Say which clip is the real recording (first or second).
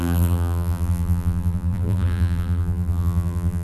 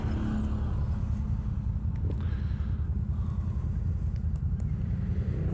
second